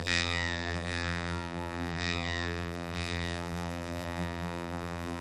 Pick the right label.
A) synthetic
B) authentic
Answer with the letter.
A